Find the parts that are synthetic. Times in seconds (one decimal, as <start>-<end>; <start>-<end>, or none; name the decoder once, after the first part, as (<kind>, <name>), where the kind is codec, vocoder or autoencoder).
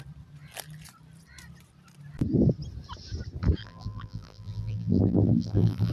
3.6-5.9 (vocoder, BigVGAN v2)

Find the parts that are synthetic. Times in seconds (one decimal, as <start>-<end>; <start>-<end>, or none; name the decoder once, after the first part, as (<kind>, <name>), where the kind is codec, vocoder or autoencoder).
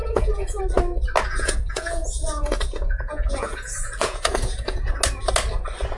0.0-0.6 (vocoder, Vocos); 1.3-4.9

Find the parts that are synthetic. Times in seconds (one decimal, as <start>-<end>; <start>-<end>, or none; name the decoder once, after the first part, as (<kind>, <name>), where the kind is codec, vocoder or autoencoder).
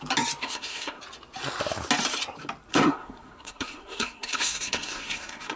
0.4-1.0 (codec, SNAC); 2.7-5.6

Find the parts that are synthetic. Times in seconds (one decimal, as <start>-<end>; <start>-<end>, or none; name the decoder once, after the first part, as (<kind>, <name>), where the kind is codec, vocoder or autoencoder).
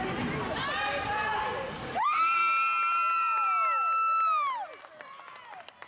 0.0-2.4 (vocoder, BigVGAN v2); 5.5-5.9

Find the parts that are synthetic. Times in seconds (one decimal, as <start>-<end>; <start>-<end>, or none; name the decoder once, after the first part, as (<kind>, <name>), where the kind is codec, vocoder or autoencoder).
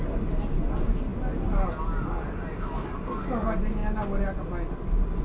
none